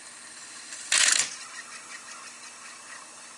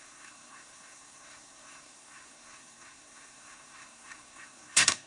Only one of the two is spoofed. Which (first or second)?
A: second